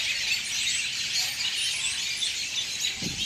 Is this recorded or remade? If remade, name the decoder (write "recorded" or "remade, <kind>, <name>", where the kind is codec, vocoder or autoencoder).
recorded